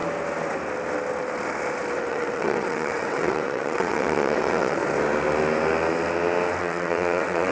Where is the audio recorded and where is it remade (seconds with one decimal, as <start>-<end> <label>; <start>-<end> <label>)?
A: 0.0-2.1 recorded; 2.1-4.8 remade; 4.8-6.6 recorded; 6.6-7.5 remade